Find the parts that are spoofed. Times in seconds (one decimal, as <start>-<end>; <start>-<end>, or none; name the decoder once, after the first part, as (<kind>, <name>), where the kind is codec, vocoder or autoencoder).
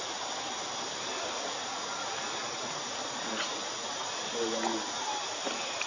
2.4-3.3 (vocoder, BigVGAN v2)